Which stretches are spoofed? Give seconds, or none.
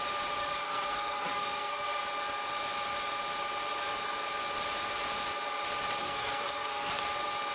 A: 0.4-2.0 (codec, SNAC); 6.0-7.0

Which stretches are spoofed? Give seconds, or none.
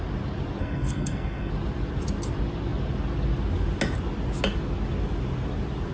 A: 0.6-1.5 (codec, SNAC)